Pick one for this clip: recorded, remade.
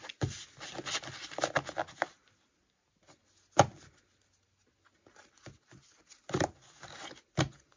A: recorded